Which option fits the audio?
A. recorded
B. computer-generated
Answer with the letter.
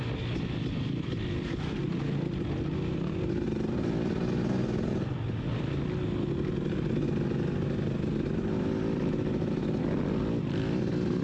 A